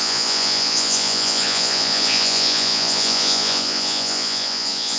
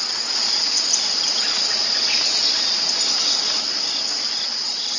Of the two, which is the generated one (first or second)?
first